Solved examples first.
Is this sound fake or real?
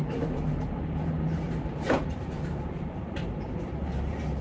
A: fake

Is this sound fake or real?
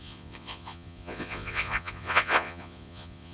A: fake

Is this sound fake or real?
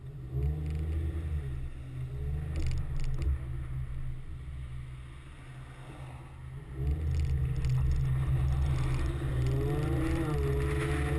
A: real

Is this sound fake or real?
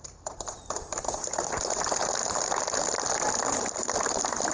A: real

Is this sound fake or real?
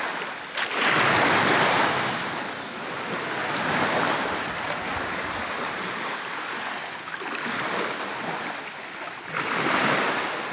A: real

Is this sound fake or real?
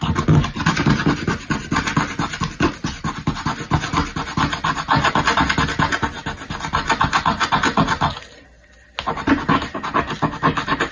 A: real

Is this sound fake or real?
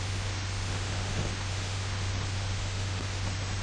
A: fake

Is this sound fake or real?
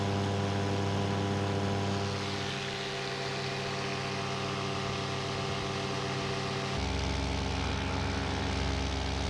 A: real